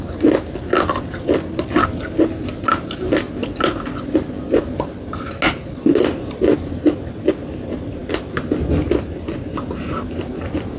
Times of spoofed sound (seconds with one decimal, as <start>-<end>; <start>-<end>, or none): none